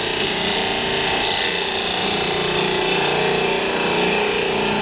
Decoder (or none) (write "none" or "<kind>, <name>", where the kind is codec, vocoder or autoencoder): none